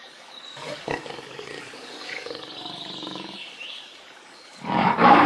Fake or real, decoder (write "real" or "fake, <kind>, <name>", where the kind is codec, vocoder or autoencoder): fake, codec, DAC